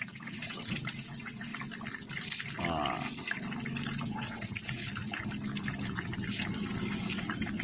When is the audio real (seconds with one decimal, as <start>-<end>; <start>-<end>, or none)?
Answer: 1.5-4.0; 4.8-7.6